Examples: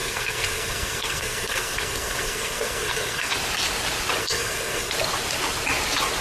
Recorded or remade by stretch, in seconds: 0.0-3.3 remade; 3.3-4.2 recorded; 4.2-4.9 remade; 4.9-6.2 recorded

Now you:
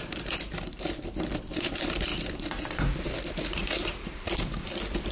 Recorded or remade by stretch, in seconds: 0.0-5.1 remade